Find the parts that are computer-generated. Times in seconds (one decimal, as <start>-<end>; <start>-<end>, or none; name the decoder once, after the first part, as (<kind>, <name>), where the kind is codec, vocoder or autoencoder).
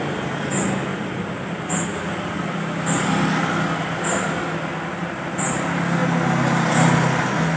none